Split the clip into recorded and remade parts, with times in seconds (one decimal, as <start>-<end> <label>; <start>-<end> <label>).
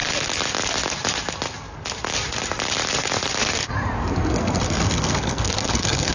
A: 0.0-4.1 recorded; 4.1-6.1 remade